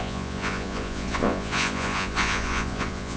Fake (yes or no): yes